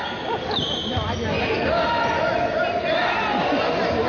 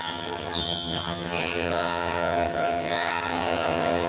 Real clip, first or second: first